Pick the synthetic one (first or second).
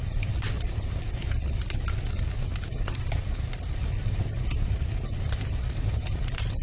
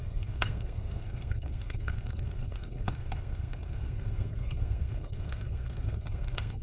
second